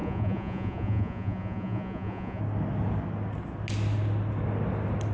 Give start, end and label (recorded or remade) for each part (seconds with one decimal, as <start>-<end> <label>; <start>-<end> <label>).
0.0-2.4 remade; 2.4-5.1 recorded